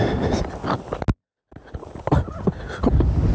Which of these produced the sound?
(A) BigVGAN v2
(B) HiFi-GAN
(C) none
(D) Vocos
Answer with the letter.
C